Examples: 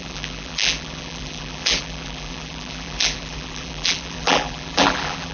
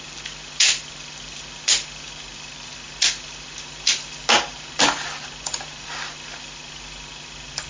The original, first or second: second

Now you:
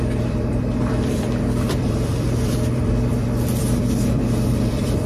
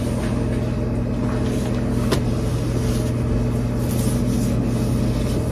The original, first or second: second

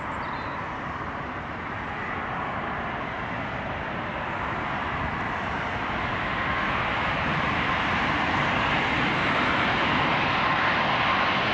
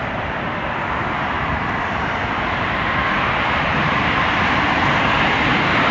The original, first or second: first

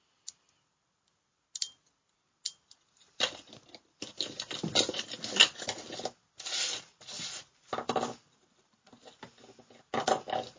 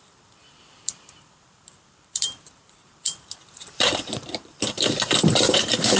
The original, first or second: first